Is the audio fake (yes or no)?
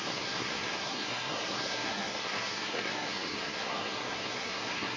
yes